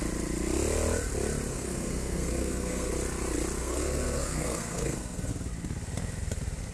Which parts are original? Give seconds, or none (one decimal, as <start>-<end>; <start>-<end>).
0.0-1.5; 2.9-3.6; 5.3-6.7